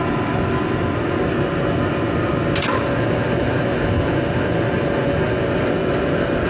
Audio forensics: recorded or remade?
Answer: recorded